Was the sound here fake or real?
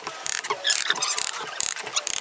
fake